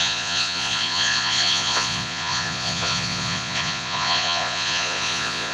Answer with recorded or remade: remade